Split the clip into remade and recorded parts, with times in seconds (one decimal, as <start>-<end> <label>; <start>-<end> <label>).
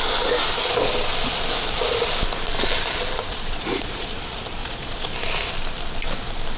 0.0-3.3 recorded; 3.3-4.1 remade; 4.1-4.6 recorded; 4.6-5.1 remade; 5.1-6.6 recorded